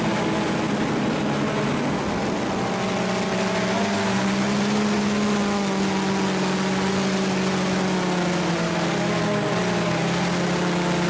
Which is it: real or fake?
real